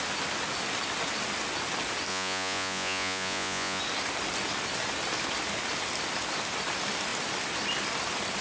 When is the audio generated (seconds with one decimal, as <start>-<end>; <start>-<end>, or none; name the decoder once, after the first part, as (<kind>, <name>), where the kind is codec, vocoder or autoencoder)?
2.1-3.8 (vocoder, Vocos)